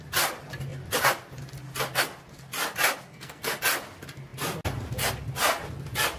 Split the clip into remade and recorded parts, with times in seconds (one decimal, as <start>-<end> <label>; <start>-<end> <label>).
0.0-3.1 recorded; 3.1-3.6 remade; 3.6-6.2 recorded